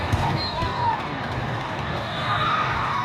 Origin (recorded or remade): remade